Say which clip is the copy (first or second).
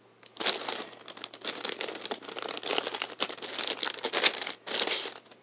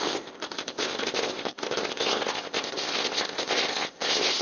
second